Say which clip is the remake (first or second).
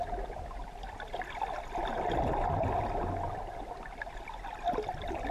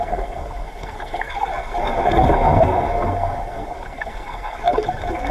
second